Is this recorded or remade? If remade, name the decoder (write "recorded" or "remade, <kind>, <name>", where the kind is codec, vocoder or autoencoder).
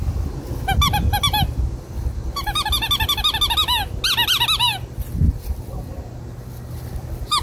recorded